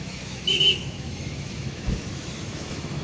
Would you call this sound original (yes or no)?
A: no